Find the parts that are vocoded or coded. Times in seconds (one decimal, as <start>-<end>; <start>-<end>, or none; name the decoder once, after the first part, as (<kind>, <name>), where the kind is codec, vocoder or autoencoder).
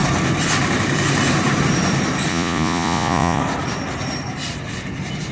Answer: 2.3-3.4 (vocoder, Vocos)